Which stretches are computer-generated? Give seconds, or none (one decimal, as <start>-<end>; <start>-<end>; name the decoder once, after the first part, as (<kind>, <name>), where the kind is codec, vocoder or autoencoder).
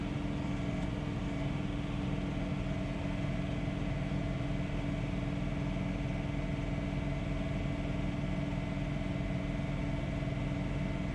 none